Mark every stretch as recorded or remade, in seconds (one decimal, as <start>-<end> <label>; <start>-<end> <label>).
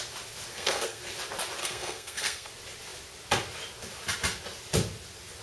0.0-0.5 recorded; 0.5-1.0 remade; 1.0-1.6 recorded; 1.6-2.5 remade; 2.5-5.4 recorded